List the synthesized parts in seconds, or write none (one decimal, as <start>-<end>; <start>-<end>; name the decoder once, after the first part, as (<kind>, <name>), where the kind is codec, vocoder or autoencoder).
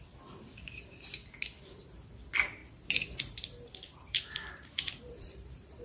2.6-5.8 (vocoder, BigVGAN v2)